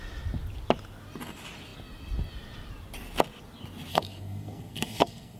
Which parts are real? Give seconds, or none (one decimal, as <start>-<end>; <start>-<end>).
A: 0.0-3.9